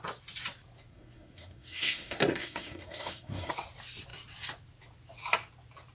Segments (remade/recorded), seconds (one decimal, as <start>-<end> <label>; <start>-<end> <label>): 0.0-0.9 recorded; 0.9-3.5 remade; 3.5-5.9 recorded